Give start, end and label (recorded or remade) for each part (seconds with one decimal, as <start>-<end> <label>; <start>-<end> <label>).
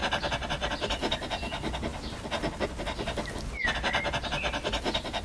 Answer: 0.0-5.2 recorded